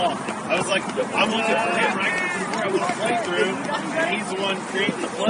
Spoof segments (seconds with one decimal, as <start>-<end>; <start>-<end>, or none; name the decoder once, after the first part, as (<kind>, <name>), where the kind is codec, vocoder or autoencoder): 0.7-3.1 (vocoder, BigVGAN v2)